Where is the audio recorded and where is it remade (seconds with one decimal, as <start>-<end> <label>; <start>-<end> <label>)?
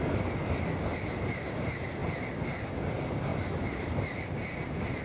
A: 0.0-0.9 recorded; 0.9-1.5 remade; 1.5-2.0 recorded; 2.0-2.7 remade; 2.7-5.0 recorded